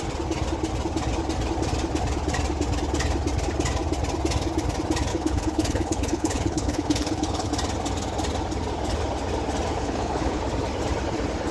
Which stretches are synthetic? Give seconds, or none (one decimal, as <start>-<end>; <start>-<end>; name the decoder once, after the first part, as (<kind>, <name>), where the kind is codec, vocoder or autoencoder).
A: 5.1-7.5 (codec, HILCodec); 9.7-10.4